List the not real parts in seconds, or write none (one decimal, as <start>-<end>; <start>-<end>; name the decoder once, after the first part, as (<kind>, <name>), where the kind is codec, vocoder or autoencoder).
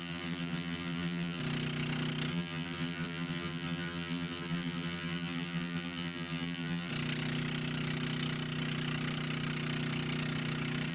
0.0-1.4 (vocoder, BigVGAN v2); 2.3-6.9